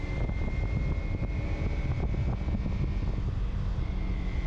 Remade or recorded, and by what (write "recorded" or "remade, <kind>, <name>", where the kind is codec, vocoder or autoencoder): recorded